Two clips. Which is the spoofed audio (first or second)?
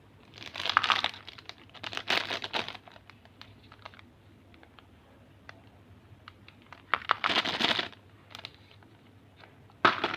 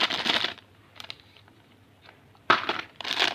second